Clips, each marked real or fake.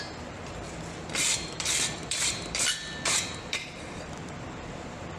fake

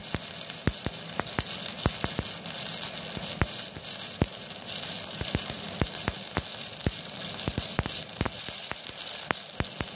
real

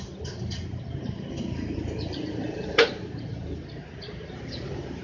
fake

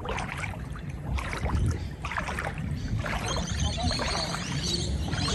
fake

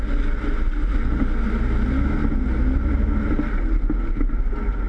real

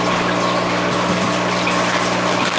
real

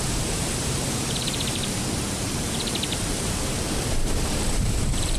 fake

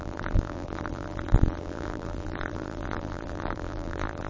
fake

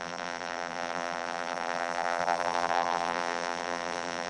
fake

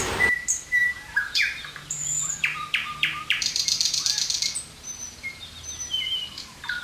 fake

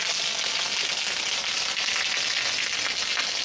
real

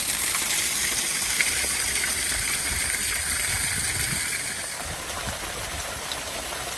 real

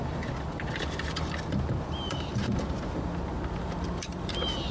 fake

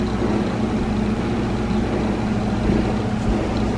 real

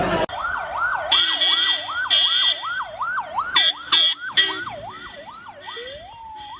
real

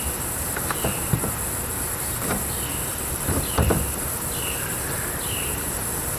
fake